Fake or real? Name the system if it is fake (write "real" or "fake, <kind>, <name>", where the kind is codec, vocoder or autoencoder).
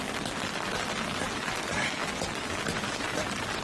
real